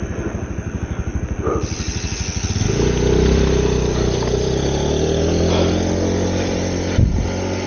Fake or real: real